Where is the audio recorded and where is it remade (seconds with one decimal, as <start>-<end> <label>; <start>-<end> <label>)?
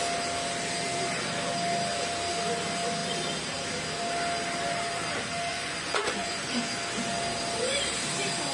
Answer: 0.0-5.5 recorded; 5.5-6.5 remade; 6.5-8.5 recorded